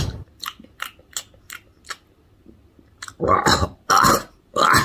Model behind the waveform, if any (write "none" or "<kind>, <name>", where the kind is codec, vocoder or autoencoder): none